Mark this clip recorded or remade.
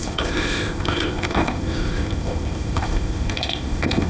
remade